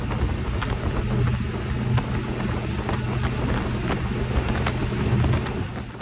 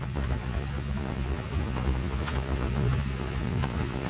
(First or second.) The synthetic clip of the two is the second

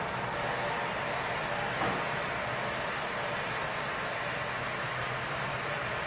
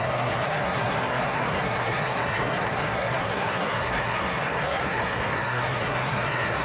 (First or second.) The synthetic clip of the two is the second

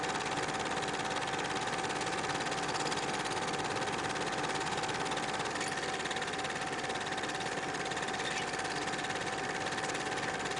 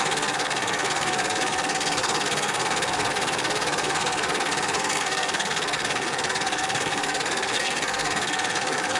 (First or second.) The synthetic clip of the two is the second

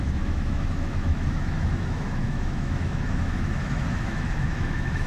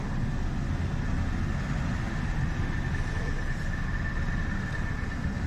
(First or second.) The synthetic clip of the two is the first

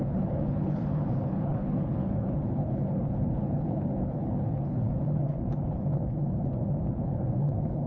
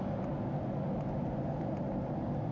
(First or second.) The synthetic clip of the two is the first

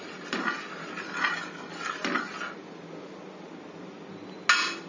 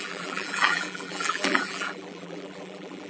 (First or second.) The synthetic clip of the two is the second